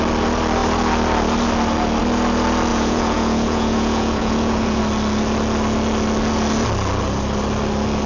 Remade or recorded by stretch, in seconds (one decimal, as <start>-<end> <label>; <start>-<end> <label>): 0.0-2.7 recorded; 2.7-4.8 remade; 4.8-8.1 recorded